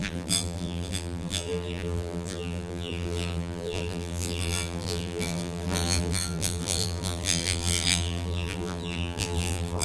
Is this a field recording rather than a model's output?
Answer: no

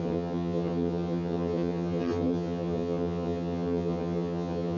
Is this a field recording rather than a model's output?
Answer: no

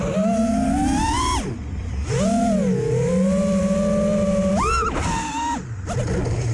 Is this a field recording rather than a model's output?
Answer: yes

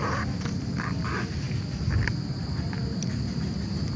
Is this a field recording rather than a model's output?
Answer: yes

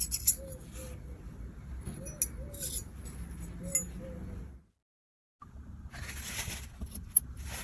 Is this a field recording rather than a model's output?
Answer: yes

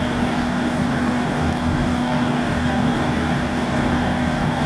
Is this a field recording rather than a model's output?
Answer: no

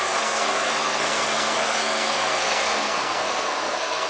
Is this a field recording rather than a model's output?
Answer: no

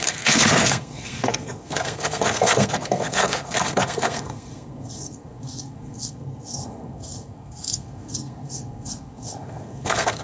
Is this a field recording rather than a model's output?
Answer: no